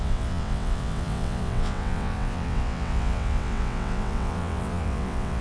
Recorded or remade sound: remade